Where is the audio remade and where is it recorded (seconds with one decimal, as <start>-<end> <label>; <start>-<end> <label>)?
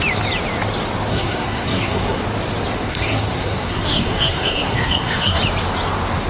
0.0-1.1 recorded; 1.1-2.2 remade; 2.2-2.9 recorded; 2.9-5.4 remade; 5.4-6.3 recorded